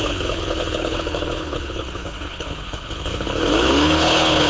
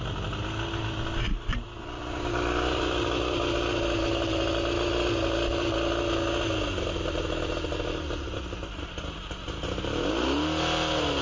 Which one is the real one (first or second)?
second